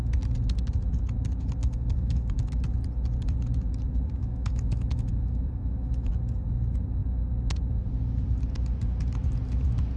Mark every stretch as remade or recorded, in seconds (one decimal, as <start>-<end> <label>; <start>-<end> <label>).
0.0-1.6 recorded; 1.6-2.5 remade; 2.5-4.2 recorded; 4.2-6.1 remade; 6.1-10.0 recorded